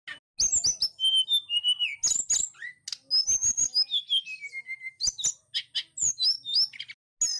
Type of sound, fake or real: real